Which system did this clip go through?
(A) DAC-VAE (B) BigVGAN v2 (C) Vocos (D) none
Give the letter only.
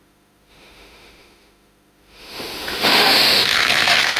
A